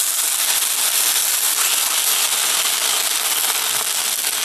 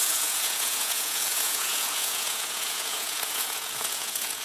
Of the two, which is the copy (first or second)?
second